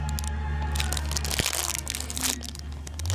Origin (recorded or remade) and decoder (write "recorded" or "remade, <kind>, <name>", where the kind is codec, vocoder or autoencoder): recorded